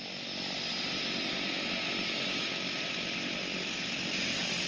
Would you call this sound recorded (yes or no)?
yes